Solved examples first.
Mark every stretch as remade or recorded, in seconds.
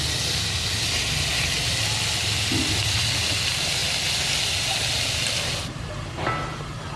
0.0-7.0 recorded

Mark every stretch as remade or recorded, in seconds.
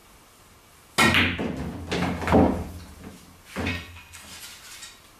0.0-3.7 recorded; 3.7-4.3 remade; 4.3-5.2 recorded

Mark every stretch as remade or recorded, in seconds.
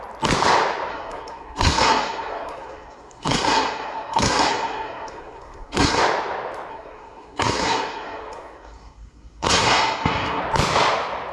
0.0-0.9 recorded; 0.9-6.0 remade; 6.0-6.7 recorded; 6.7-10.4 remade; 10.4-11.3 recorded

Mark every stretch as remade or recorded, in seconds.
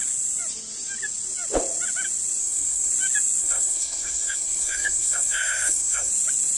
0.0-2.4 recorded; 2.4-2.9 remade; 2.9-3.4 recorded; 3.4-6.1 remade; 6.1-6.6 recorded